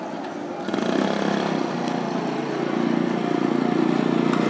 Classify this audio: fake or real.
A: real